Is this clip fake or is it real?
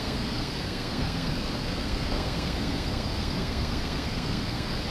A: fake